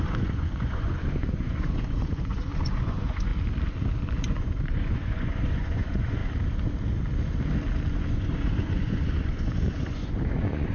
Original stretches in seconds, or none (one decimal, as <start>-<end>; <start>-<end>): 3.3-4.3; 6.2-7.9